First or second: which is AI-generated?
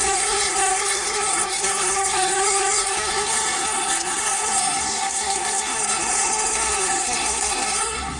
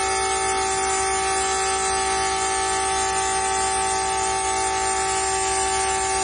first